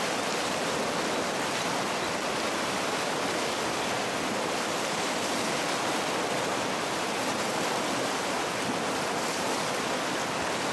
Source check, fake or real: real